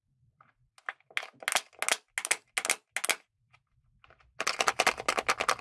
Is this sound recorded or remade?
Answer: recorded